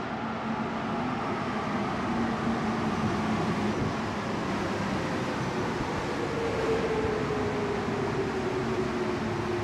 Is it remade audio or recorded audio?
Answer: recorded